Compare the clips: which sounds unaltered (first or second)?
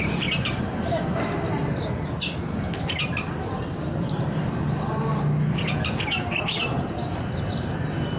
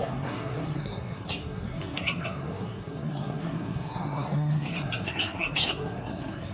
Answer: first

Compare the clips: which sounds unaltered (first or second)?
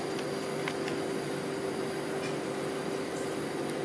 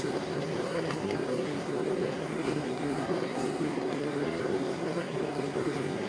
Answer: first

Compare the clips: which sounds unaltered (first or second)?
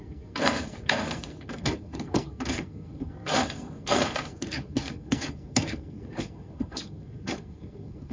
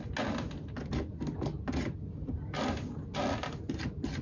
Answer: second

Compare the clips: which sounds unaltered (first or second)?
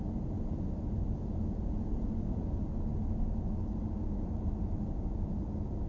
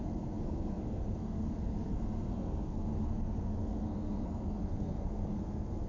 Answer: first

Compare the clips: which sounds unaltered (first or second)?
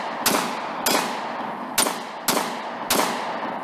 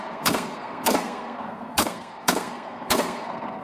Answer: first